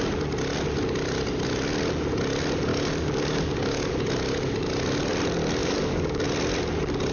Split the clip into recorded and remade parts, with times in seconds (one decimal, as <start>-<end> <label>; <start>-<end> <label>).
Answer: 0.0-2.7 recorded; 2.7-3.9 remade; 3.9-5.6 recorded; 5.6-6.2 remade; 6.2-7.1 recorded